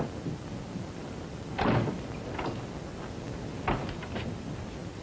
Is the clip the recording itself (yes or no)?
yes